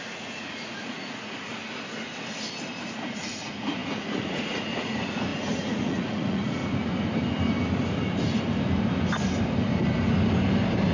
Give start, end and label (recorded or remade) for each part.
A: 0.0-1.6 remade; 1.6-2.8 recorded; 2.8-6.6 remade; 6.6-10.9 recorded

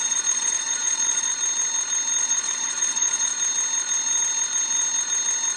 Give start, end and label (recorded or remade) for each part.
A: 0.0-1.3 remade; 1.3-2.2 recorded; 2.2-3.3 remade; 3.3-5.6 recorded

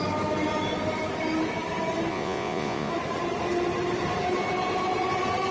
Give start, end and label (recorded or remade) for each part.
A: 0.0-2.1 recorded; 2.1-2.9 remade; 2.9-5.5 recorded